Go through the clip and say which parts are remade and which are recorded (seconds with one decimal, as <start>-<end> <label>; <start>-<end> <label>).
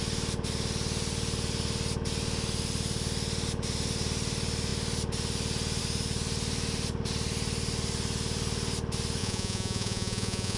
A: 0.0-9.2 recorded; 9.2-10.6 remade